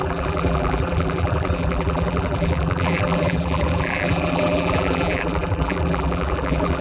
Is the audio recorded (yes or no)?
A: no